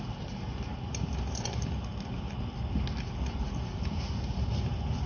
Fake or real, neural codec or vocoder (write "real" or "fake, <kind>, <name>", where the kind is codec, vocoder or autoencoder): real